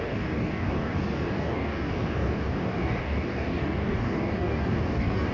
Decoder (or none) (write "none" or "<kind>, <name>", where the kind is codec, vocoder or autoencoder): codec, DAC